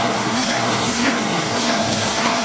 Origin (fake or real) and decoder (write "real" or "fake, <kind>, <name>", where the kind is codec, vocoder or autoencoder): fake, codec, SNAC